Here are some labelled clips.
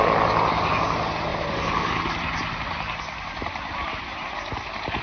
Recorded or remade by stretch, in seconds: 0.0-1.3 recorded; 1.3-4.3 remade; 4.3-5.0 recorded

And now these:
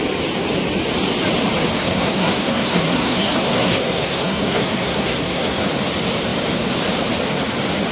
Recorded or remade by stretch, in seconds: 0.0-1.8 recorded; 1.8-5.6 remade; 5.6-7.9 recorded

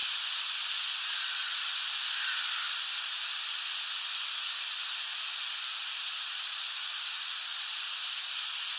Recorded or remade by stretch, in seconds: 0.0-8.8 recorded

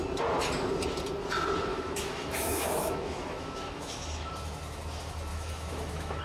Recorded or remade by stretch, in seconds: 0.0-1.7 recorded; 1.7-4.3 remade; 4.3-5.3 recorded; 5.3-6.2 remade